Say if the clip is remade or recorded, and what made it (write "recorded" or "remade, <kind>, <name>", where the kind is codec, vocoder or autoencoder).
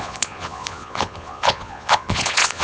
remade, vocoder, Vocos